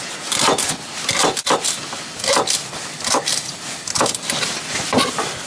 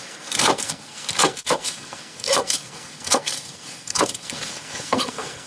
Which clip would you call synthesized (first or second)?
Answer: second